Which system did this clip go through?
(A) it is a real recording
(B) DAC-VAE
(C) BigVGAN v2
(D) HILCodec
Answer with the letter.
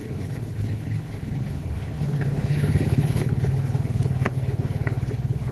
D